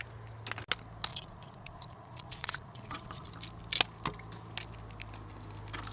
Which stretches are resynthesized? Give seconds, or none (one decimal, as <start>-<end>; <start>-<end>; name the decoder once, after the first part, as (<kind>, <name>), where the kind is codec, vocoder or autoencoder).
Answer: 1.1-3.3 (vocoder, Vocos)